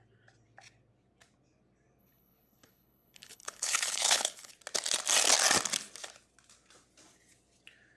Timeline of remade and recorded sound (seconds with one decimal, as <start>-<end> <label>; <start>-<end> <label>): 0.0-2.0 recorded; 2.0-4.5 remade; 4.5-8.0 recorded

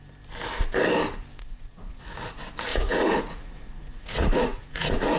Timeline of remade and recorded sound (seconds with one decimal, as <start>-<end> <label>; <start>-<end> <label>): 0.0-1.4 recorded; 1.4-2.0 remade; 2.0-2.7 recorded; 2.7-5.2 remade

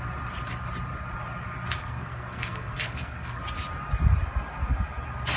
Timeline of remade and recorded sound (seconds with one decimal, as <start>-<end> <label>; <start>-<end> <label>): 0.0-1.8 recorded; 1.8-3.4 remade; 3.4-5.4 recorded

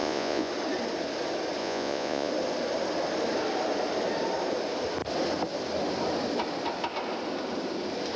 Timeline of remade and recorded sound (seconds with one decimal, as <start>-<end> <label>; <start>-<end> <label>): 0.0-0.5 remade; 0.5-1.6 recorded; 1.6-2.3 remade; 2.3-8.2 recorded

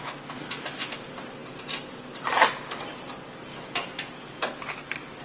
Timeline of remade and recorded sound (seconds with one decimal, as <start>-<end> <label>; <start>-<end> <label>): 0.0-5.2 recorded

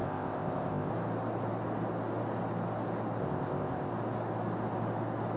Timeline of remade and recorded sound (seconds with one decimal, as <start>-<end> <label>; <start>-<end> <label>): 0.0-0.9 remade; 0.9-3.2 recorded; 3.2-3.9 remade; 3.9-5.4 recorded

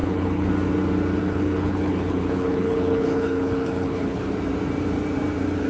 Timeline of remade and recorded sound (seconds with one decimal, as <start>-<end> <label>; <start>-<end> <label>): 0.0-0.5 remade; 0.5-1.2 recorded; 1.2-4.3 remade; 4.3-5.7 recorded